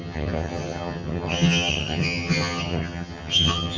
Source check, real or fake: fake